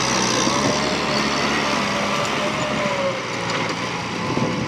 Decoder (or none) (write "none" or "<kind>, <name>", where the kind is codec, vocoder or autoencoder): none